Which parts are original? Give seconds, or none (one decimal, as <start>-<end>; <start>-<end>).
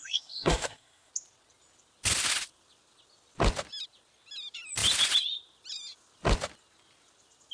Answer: 1.1-7.5